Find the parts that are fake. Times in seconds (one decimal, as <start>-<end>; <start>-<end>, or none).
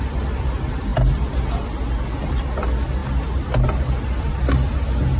0.9-1.5